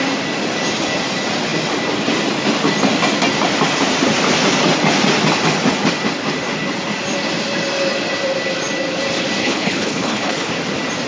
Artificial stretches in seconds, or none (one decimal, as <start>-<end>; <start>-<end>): 9.4-10.5

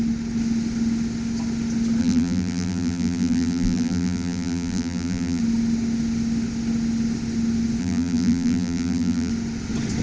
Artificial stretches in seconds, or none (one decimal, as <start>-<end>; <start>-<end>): 2.0-5.4; 7.8-9.3

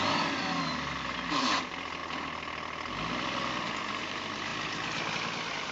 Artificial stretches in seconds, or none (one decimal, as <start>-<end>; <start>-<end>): 0.0-2.0; 4.0-4.5; 5.1-5.7

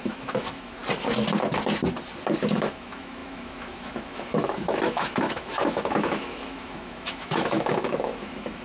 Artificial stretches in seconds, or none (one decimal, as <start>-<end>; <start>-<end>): 0.0-0.8; 2.4-8.6